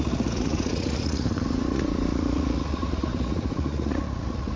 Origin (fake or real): fake